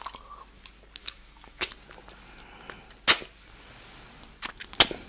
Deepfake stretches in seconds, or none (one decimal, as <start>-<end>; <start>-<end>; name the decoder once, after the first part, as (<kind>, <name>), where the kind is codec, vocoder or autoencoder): 1.0-1.7 (autoencoder, DAC-VAE)

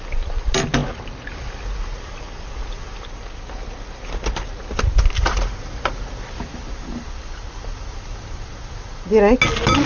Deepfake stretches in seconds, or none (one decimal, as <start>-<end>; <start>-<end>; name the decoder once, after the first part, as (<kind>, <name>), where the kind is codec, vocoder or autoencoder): none

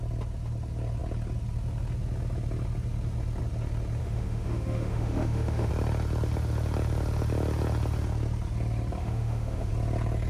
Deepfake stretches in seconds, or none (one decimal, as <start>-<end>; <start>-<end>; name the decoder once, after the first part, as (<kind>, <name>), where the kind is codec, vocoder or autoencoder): 4.0-5.7 (autoencoder, DAC-VAE); 9.0-9.7

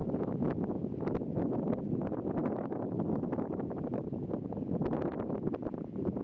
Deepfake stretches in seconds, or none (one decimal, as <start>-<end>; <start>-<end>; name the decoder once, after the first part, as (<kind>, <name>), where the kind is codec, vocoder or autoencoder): 0.0-0.7 (autoencoder, DAC-VAE); 2.4-4.5